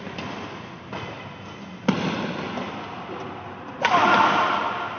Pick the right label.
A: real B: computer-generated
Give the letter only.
A